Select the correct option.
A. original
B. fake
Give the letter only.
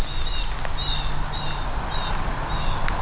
A